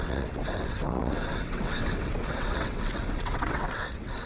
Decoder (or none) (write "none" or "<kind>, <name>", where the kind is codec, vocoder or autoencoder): vocoder, WaveNeXt